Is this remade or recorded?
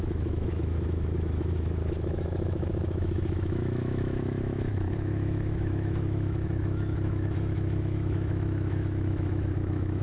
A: remade